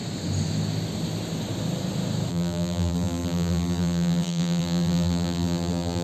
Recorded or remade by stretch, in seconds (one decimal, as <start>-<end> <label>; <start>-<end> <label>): 0.0-2.3 recorded; 2.3-6.0 remade